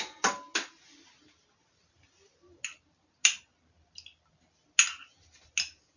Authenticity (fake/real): real